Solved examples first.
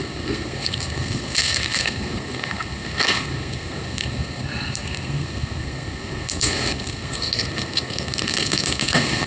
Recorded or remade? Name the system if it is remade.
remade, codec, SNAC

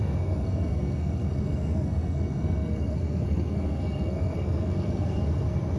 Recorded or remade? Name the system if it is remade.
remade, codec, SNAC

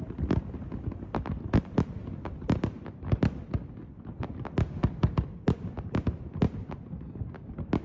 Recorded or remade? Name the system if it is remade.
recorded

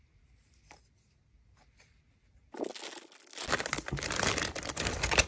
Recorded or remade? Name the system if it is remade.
recorded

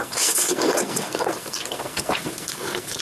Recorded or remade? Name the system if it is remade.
remade, codec, SNAC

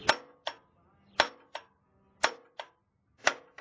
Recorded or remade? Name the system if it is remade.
recorded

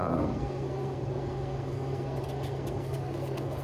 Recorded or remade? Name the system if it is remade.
remade, codec, SNAC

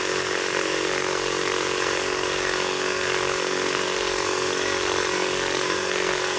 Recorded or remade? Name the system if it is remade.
remade, codec, SNAC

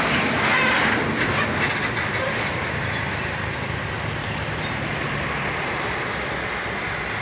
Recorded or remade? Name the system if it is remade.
recorded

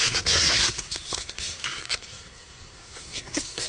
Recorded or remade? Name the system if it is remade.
remade, codec, SNAC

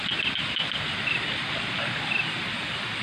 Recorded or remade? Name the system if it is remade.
recorded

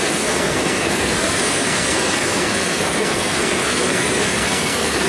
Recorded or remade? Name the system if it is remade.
remade, codec, SNAC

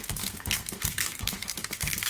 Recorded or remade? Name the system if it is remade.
remade, codec, SNAC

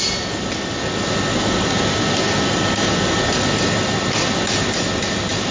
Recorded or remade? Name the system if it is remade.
recorded